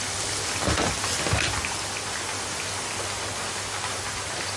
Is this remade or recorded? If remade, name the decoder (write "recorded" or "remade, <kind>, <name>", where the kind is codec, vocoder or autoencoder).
recorded